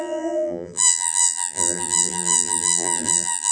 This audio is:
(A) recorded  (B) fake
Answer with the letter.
B